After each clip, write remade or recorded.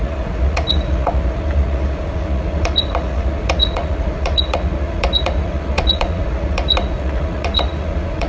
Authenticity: remade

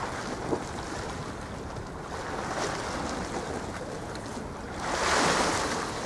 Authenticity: recorded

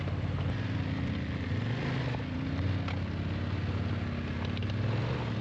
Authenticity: recorded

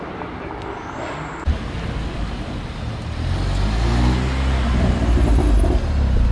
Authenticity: recorded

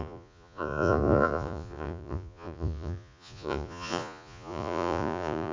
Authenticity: remade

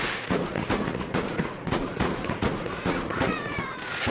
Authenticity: remade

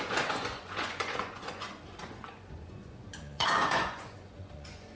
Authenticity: remade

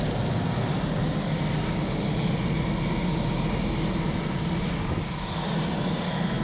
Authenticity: recorded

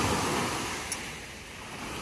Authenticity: recorded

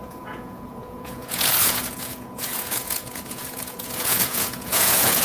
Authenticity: remade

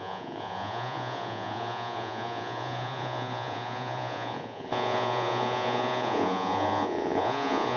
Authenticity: remade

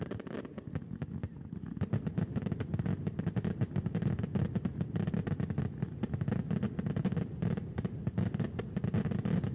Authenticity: recorded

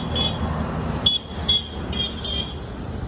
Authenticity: recorded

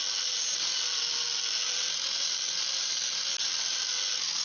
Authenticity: recorded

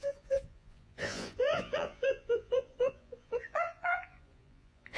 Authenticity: remade